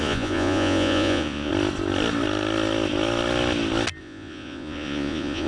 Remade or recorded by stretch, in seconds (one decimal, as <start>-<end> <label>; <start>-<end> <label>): 0.0-1.5 remade; 1.5-4.0 recorded; 4.0-5.5 remade

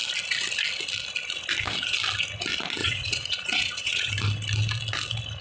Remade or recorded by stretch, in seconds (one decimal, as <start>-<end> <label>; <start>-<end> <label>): 0.0-2.8 recorded; 2.8-4.1 remade; 4.1-5.4 recorded